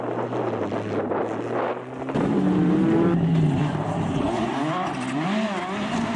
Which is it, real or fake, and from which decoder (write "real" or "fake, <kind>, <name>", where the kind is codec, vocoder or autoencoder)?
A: real